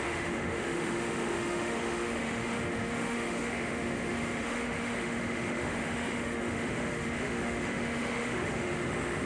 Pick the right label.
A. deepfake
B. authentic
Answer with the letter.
A